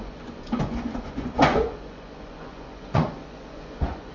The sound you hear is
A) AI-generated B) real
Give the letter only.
A